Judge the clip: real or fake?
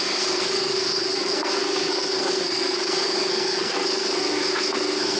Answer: fake